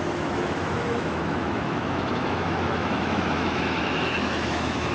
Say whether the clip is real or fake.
fake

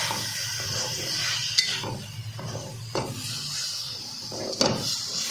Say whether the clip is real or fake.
real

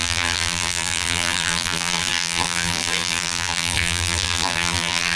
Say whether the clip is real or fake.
fake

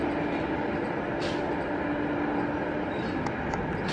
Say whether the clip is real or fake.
real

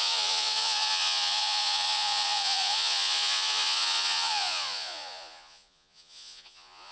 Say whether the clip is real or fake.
fake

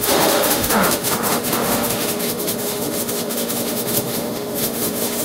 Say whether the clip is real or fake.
fake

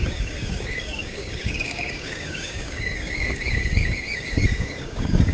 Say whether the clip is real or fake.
fake